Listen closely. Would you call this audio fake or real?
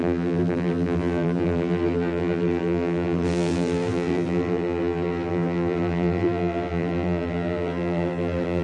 fake